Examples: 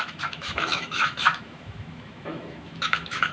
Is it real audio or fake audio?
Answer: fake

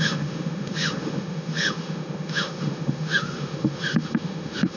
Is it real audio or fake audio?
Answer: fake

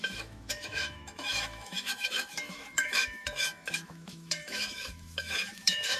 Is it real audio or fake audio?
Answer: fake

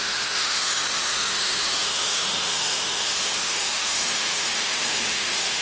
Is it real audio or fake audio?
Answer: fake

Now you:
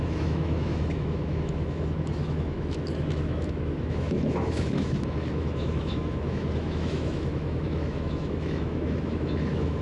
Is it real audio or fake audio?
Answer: fake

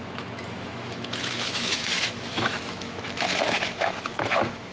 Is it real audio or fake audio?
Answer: fake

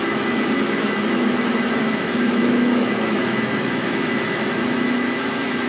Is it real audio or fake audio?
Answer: fake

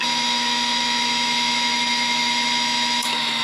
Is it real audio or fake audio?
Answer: fake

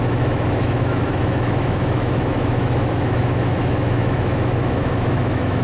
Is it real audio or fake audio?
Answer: fake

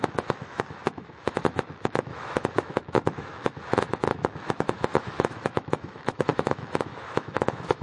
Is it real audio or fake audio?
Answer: fake